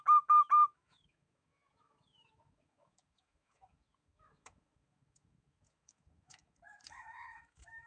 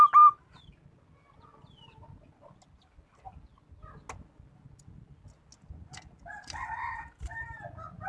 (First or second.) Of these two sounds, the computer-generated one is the first